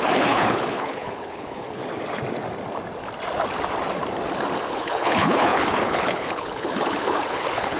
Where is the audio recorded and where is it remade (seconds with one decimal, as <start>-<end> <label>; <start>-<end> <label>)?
0.0-1.8 remade; 1.8-4.7 recorded; 4.7-7.8 remade